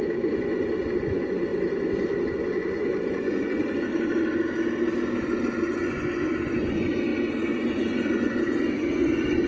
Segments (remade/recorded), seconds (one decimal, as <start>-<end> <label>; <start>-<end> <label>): 0.0-1.5 remade; 1.5-2.4 recorded; 2.4-3.9 remade; 3.9-5.6 recorded; 5.6-9.5 remade

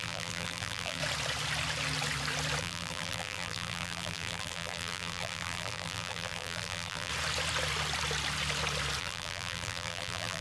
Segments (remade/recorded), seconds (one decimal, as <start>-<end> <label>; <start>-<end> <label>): 0.0-1.0 remade; 1.0-2.6 recorded; 2.6-7.1 remade; 7.1-9.0 recorded; 9.0-10.4 remade